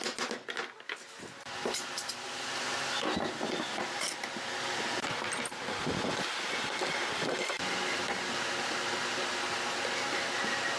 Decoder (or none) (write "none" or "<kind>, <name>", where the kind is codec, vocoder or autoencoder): none